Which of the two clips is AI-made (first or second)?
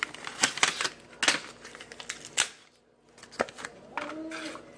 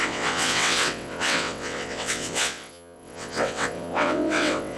second